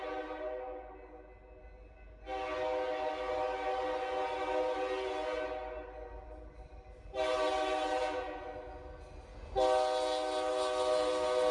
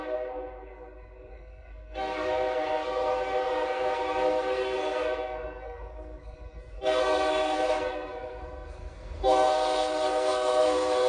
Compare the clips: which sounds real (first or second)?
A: first